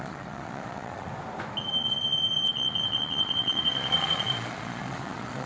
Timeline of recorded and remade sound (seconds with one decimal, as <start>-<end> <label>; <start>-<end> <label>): 0.0-1.1 remade; 1.1-1.6 recorded; 1.6-5.5 remade